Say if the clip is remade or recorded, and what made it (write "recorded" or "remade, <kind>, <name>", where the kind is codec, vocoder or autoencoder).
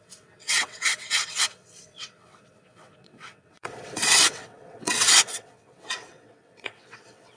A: remade, vocoder, WaveNeXt